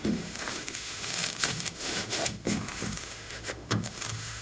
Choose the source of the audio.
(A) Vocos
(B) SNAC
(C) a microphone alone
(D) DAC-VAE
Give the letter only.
D